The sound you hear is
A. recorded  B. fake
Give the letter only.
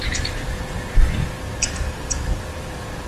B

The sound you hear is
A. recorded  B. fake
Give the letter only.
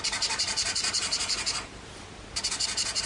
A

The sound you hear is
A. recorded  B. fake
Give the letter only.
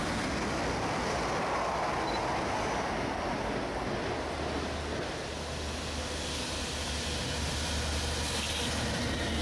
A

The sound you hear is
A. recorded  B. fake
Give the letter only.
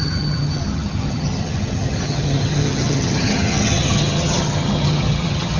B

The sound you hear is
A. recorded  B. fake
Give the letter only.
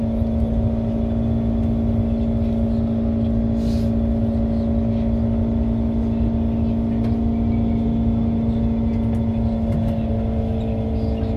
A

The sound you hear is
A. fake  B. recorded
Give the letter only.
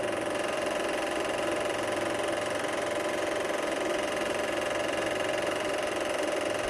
A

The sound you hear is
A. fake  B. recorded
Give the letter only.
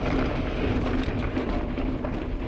B